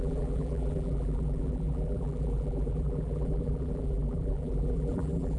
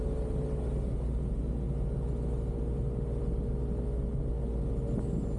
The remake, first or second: first